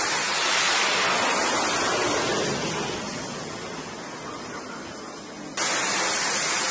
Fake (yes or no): no